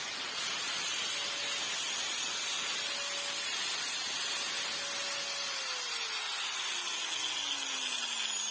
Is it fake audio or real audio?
real